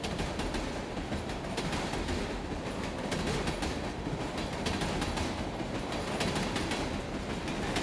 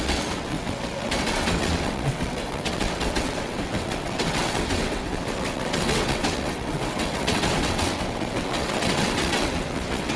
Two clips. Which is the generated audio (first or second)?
second